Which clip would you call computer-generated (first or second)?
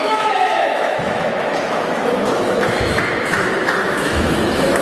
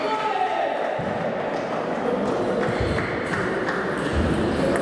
first